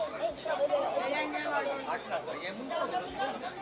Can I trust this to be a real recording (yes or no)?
yes